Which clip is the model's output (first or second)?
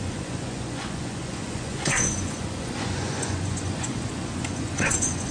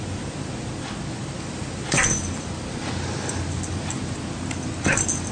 first